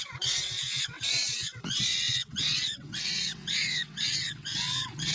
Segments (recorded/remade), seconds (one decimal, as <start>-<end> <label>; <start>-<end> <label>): 0.0-5.1 remade